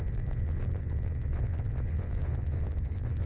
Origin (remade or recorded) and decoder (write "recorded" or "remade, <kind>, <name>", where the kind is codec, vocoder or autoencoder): remade, vocoder, Vocos